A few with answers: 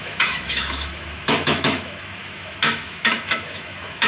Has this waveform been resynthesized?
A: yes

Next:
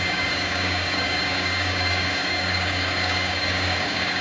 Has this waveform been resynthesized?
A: yes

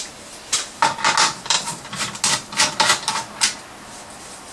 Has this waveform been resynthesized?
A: no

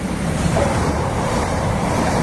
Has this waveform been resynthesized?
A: yes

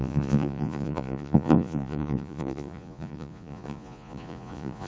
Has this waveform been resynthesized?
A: yes